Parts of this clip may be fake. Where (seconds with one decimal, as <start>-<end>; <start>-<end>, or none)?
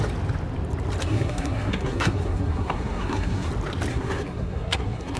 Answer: 1.0-3.5; 3.9-5.2